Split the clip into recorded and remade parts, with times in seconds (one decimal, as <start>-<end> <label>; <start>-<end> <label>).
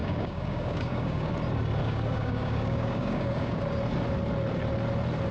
0.0-1.3 remade; 1.3-1.8 recorded; 1.8-3.6 remade; 3.6-5.3 recorded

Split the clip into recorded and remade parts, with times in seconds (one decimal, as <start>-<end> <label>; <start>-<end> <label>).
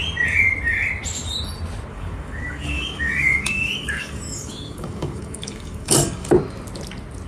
0.0-1.9 recorded; 1.9-6.3 remade; 6.3-7.3 recorded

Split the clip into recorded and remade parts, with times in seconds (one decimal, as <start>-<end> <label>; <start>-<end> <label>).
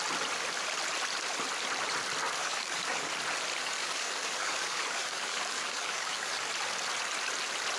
0.0-2.4 recorded; 2.4-3.1 remade; 3.1-3.6 recorded; 3.6-6.5 remade; 6.5-7.8 recorded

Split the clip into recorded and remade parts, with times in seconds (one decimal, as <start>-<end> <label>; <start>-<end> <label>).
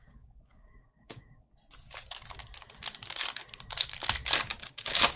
0.0-1.5 remade; 1.5-4.6 recorded; 4.6-5.2 remade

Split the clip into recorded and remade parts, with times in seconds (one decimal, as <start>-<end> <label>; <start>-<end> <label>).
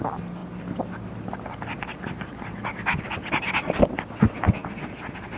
0.0-5.4 recorded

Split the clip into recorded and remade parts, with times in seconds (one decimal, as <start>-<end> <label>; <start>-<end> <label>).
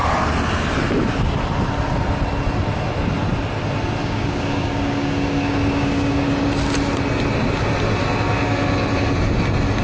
0.0-4.0 recorded; 4.0-6.3 remade; 6.3-9.8 recorded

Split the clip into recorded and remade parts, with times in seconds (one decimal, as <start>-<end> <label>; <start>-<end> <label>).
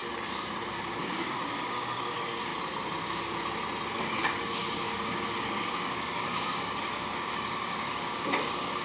0.0-0.7 recorded; 0.7-2.5 remade; 2.5-3.9 recorded; 3.9-8.8 remade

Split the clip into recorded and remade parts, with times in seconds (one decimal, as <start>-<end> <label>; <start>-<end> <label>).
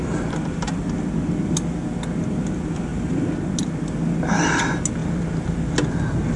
0.0-6.4 recorded